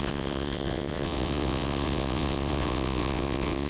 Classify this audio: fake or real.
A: fake